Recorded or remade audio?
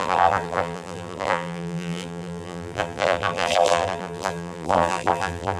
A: remade